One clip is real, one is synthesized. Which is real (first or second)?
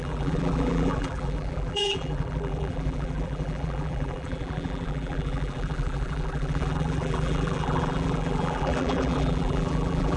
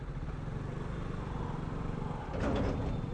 second